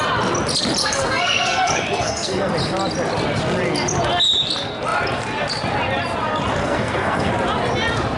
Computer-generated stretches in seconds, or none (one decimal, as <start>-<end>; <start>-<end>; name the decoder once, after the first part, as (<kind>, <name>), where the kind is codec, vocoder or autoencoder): 0.8-2.5 (codec, SNAC); 6.6-7.3